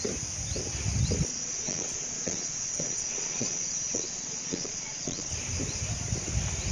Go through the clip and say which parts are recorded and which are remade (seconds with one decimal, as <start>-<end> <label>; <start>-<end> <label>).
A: 0.0-1.3 recorded; 1.3-5.3 remade; 5.3-6.7 recorded